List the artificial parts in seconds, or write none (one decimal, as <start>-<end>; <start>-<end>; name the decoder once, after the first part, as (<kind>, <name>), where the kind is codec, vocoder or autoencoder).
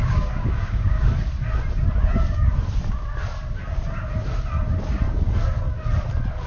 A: 0.0-1.1 (codec, DAC)